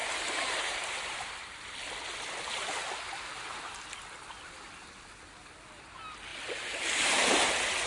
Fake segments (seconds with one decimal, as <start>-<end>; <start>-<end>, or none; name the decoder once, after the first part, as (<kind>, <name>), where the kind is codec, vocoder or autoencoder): 0.0-1.0 (vocoder, BigVGAN v2); 6.3-7.5